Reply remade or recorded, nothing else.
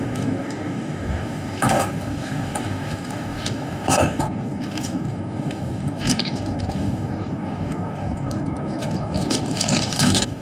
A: remade